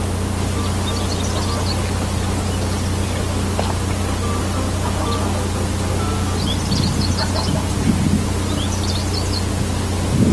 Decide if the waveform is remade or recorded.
recorded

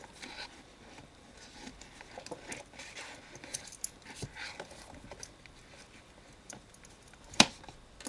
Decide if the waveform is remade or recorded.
recorded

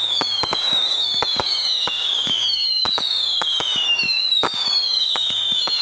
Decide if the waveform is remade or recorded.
remade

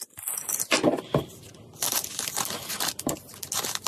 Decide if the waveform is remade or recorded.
recorded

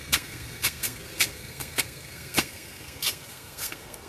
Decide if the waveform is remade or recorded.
remade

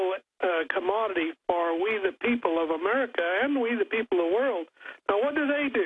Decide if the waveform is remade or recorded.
recorded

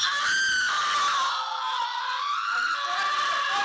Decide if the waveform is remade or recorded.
recorded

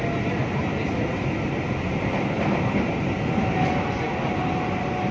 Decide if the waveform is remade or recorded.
recorded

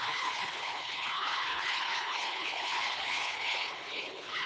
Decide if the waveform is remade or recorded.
remade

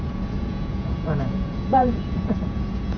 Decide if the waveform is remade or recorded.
remade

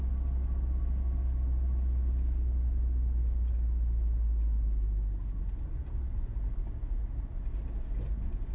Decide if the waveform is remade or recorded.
recorded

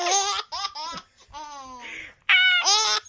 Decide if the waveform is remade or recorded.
recorded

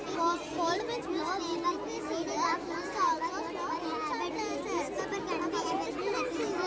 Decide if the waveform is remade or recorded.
recorded